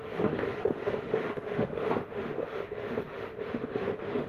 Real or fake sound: fake